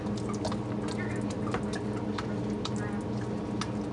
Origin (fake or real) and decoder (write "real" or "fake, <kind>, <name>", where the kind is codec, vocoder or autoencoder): real